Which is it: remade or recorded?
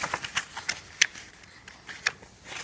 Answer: recorded